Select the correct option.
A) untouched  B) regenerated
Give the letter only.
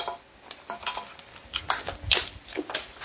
A